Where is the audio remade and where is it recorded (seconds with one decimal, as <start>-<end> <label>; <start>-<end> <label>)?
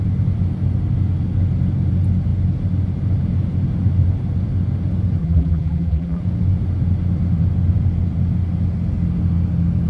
0.0-5.2 recorded; 5.2-6.2 remade; 6.2-9.9 recorded